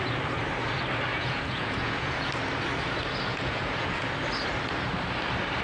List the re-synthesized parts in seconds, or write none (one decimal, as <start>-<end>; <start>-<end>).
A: 1.1-2.3; 3.3-4.1